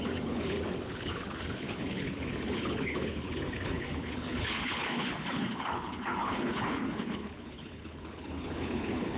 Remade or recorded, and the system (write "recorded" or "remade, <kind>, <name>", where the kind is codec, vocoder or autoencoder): remade, codec, HILCodec